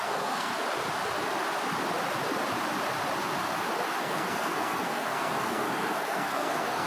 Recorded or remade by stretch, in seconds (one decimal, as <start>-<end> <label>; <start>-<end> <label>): 0.0-0.5 remade; 0.5-4.0 recorded; 4.0-6.9 remade